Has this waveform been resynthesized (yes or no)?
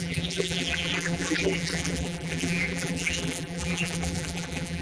yes